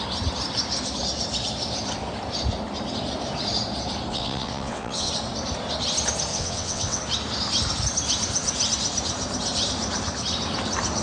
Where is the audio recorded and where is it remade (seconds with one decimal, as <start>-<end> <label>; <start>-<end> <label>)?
0.0-4.1 recorded; 4.1-5.1 remade; 5.1-6.3 recorded; 6.3-7.0 remade; 7.0-11.0 recorded